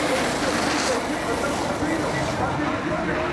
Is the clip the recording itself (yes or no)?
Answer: yes